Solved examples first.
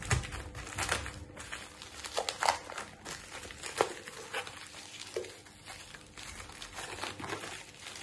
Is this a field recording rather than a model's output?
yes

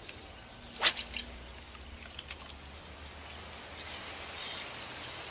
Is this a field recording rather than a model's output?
yes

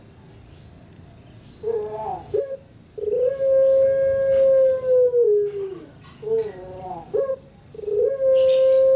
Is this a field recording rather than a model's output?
yes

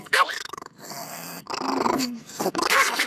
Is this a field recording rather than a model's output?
no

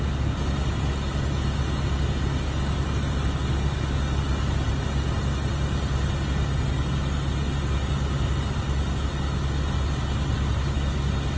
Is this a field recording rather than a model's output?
yes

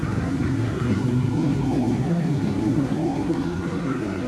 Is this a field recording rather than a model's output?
no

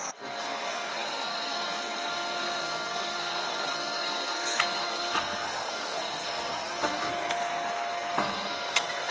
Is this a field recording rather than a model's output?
no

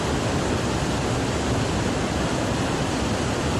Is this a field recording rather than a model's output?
yes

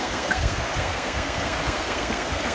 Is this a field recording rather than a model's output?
no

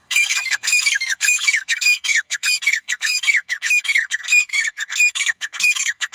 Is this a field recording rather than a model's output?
no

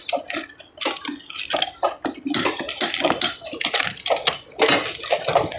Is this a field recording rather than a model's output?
yes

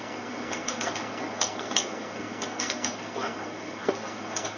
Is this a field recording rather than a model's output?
no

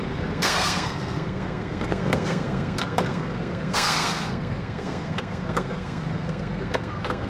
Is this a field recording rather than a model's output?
no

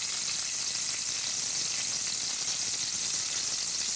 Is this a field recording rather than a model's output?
yes